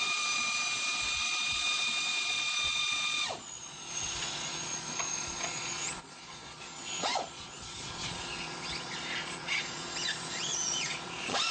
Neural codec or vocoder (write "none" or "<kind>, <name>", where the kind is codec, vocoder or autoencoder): vocoder, Vocos